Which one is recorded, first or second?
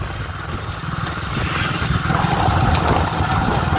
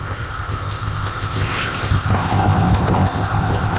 first